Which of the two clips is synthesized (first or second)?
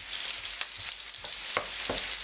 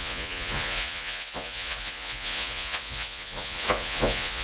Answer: second